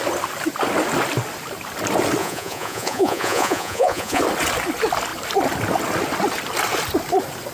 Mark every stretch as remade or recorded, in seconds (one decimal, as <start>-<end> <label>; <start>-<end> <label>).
0.0-2.2 recorded; 2.2-4.2 remade; 4.2-7.5 recorded